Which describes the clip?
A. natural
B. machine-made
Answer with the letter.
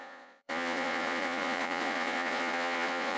B